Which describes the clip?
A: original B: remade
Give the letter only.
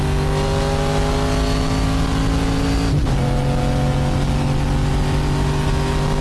A